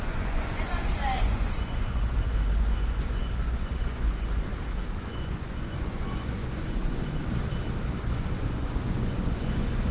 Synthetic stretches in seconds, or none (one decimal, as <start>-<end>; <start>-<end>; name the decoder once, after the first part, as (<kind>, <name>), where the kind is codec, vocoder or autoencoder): 0.0-4.5 (vocoder, Vocos); 5.0-7.2; 8.0-9.9